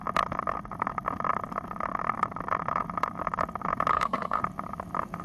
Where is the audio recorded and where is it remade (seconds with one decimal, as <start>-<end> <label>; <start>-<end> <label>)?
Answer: 0.0-3.9 recorded; 3.9-4.4 remade; 4.4-5.2 recorded